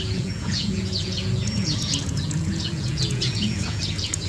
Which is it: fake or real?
fake